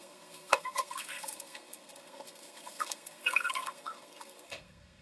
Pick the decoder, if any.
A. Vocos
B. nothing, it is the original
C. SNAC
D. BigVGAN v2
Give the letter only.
C